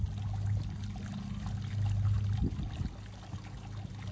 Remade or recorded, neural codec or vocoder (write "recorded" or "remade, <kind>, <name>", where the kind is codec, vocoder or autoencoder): recorded